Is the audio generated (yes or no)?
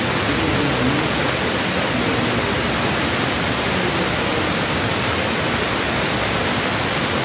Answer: no